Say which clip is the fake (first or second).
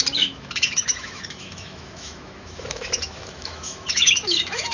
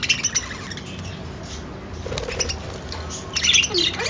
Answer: first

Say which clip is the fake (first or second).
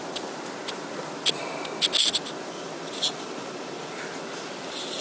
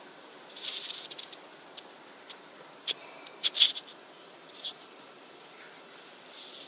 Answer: second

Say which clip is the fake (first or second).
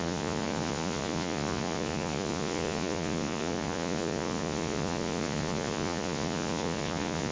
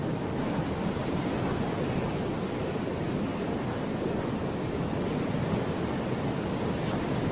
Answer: first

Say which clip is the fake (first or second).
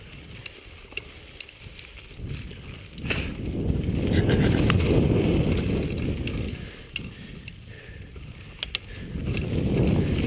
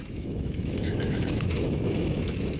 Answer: second